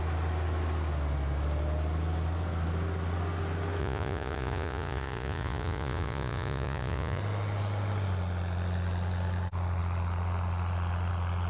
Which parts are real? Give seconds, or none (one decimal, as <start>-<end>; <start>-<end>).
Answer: 0.0-3.8; 7.2-11.5